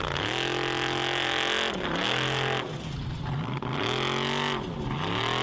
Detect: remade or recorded recorded